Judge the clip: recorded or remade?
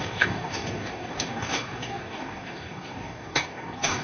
remade